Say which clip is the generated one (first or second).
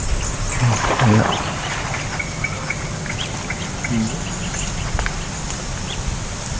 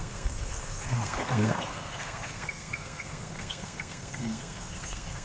second